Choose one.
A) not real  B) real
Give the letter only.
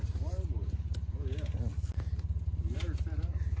B